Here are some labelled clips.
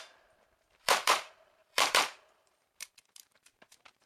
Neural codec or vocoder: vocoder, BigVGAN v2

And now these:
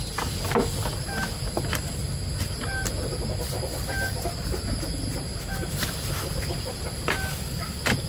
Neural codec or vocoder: none